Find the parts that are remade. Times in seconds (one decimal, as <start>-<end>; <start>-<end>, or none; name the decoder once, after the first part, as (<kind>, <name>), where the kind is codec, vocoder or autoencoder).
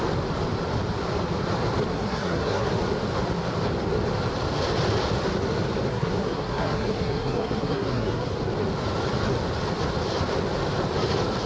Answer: 1.9-2.7 (codec, SNAC); 5.9-8.3